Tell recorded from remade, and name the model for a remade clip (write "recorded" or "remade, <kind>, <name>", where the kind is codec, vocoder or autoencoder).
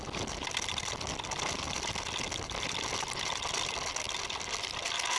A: recorded